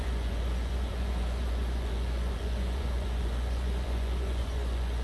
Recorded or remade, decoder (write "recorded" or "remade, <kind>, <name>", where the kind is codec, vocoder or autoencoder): remade, vocoder, Vocos